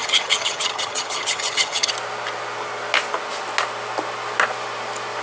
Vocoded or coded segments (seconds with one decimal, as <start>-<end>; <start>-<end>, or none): 0.0-1.9